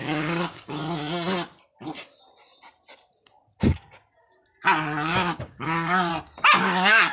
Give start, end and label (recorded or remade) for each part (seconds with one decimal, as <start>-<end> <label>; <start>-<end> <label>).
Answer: 0.0-0.8 remade; 0.8-5.1 recorded; 5.1-6.1 remade; 6.1-6.6 recorded; 6.6-7.1 remade